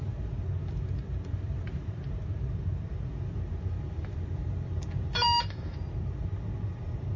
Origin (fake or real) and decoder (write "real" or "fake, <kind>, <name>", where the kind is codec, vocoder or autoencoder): fake, vocoder, BigVGAN v2